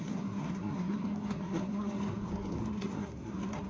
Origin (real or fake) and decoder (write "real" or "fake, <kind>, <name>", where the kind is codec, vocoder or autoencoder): fake, codec, SNAC